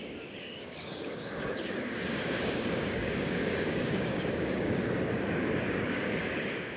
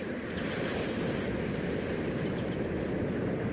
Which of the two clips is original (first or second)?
second